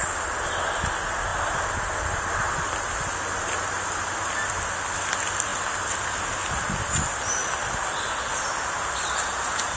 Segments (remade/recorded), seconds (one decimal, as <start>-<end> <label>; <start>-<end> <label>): 0.0-9.8 recorded